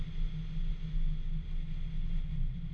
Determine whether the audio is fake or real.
real